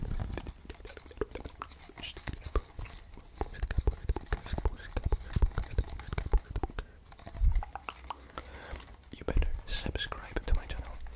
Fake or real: real